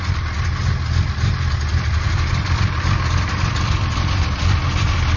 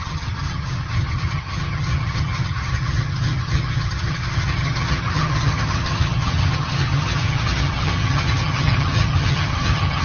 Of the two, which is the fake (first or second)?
second